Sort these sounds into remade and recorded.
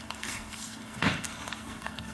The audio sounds remade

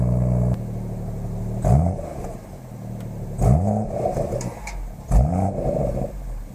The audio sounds recorded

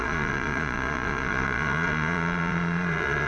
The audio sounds remade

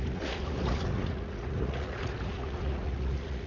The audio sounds remade